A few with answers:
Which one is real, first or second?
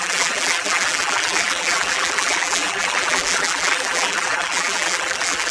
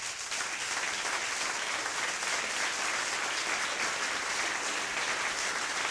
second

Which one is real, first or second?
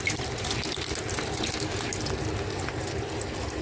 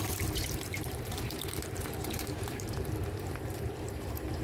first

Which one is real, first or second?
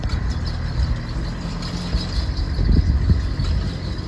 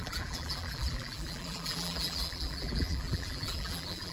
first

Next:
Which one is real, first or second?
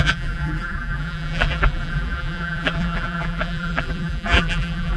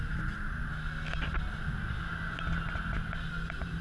second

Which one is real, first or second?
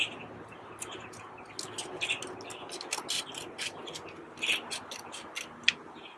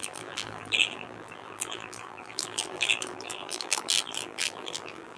first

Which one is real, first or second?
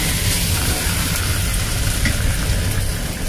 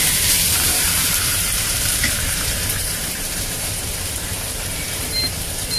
first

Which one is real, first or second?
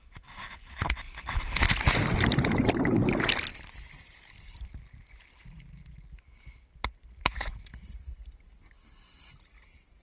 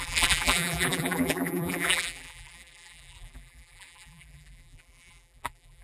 first